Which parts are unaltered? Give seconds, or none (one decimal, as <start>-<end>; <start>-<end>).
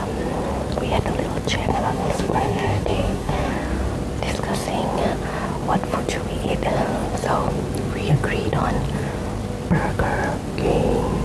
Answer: 0.0-1.7; 3.5-11.2